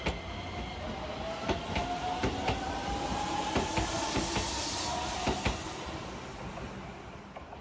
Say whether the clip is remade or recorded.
recorded